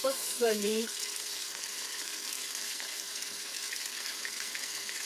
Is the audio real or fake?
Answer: fake